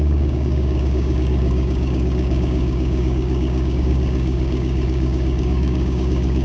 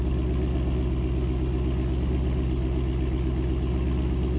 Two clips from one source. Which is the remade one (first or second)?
first